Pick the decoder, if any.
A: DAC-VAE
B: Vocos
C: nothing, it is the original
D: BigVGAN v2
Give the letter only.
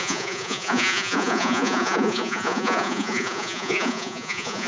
B